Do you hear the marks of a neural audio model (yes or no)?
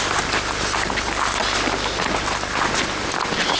no